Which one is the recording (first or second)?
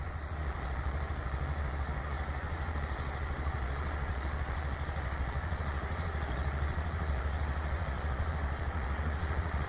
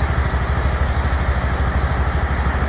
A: second